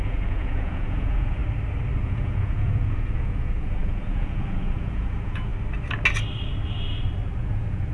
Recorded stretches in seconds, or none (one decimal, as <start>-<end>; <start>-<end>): 1.4-2.0; 5.5-7.4